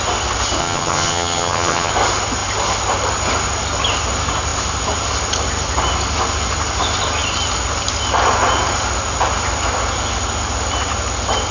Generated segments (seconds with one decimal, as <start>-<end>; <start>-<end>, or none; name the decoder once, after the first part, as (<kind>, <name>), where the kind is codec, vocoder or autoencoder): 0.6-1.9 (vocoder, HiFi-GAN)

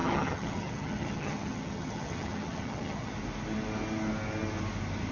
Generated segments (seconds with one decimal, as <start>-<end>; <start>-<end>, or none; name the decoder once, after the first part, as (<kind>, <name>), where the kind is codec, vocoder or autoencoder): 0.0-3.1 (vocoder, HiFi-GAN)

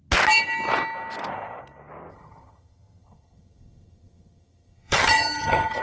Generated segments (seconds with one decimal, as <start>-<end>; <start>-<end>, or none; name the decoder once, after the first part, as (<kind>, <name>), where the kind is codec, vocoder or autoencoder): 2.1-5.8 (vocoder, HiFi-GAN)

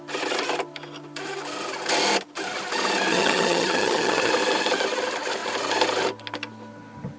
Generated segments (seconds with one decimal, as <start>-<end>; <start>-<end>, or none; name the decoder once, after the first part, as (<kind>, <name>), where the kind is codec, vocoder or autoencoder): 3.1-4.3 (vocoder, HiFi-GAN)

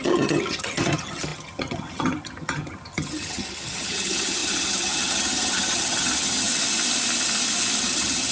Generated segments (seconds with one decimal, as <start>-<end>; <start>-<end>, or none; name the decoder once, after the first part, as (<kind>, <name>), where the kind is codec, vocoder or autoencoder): 0.0-6.5 (vocoder, HiFi-GAN); 7.8-8.3